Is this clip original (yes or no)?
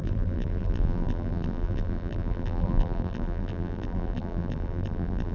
no